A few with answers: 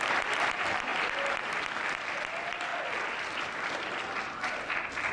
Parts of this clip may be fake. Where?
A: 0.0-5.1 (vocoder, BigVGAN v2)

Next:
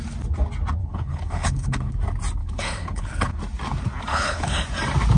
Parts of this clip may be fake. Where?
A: 0.8-1.9 (codec, HILCodec); 2.4-3.4; 4.1-4.6

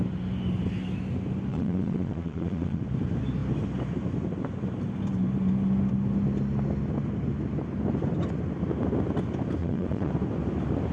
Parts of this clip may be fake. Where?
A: 1.5-2.8 (vocoder, Vocos); 9.6-10.1

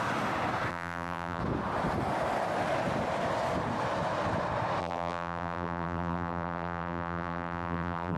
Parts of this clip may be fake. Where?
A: 0.7-1.4 (vocoder, BigVGAN v2); 4.8-8.2